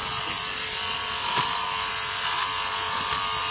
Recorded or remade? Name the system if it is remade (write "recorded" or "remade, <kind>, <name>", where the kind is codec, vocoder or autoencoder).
recorded